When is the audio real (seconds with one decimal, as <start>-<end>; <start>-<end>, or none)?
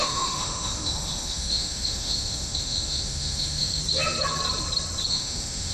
3.8-5.1